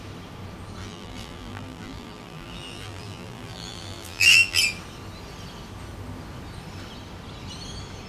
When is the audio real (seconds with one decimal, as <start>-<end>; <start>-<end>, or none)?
0.0-0.8; 4.6-8.1